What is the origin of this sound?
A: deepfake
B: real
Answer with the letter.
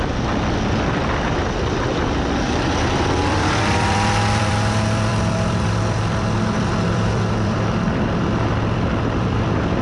A